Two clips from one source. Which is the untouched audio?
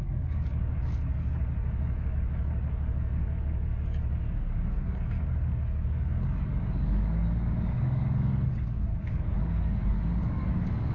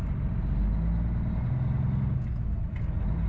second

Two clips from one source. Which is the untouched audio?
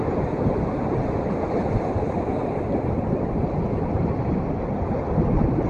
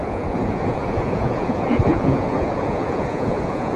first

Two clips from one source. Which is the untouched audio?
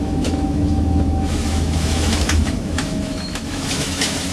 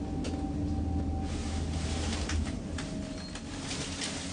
second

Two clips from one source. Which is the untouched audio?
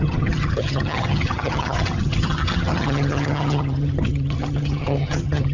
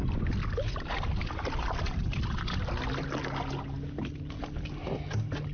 second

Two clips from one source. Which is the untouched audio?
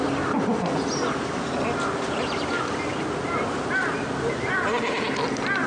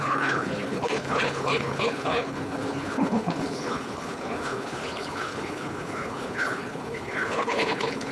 first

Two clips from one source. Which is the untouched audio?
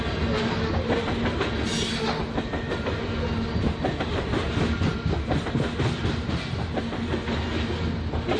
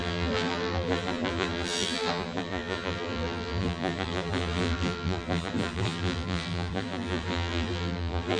first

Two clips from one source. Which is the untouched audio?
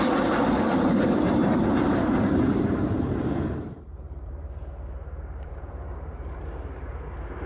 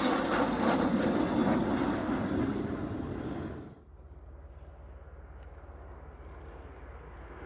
second